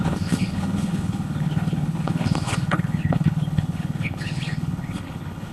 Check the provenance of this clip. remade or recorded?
remade